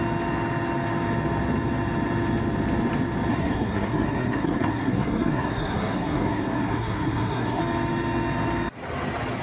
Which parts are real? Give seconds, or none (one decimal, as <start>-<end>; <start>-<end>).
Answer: 0.0-3.3; 7.6-9.4